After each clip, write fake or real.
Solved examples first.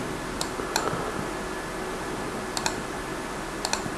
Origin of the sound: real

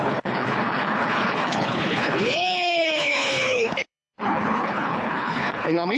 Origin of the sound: fake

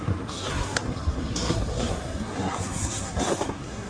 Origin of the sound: fake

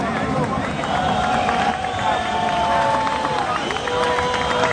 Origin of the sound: real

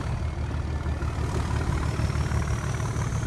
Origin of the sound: real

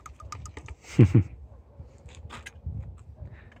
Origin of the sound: real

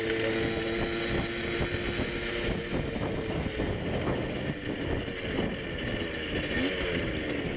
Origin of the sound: real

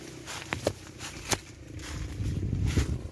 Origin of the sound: real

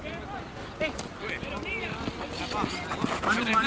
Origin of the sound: real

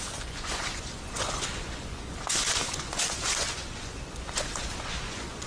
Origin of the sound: fake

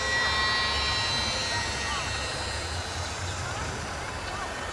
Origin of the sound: real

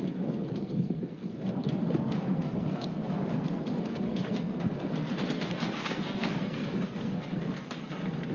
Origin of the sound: fake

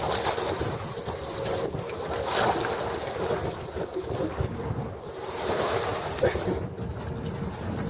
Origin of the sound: real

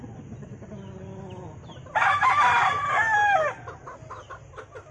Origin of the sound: real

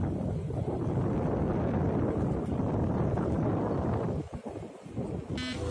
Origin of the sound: real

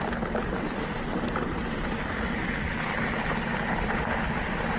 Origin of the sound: real